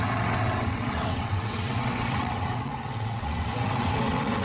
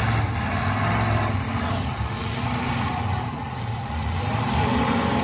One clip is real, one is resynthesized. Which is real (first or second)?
second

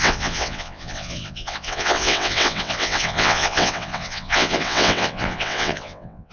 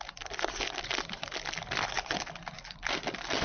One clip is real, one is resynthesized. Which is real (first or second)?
second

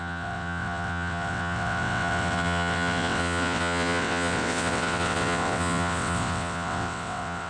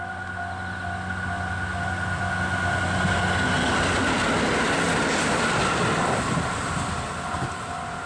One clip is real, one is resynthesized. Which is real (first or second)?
second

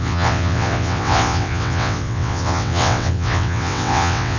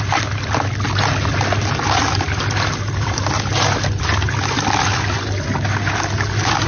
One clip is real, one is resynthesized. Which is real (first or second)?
second